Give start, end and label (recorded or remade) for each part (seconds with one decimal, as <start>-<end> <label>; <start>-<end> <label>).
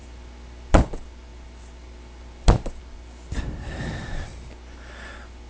0.0-0.7 recorded; 0.7-1.3 remade; 1.3-2.8 recorded; 2.8-4.3 remade; 4.3-5.5 recorded